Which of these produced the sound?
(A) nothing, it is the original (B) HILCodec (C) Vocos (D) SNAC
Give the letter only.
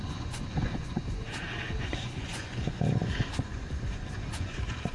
C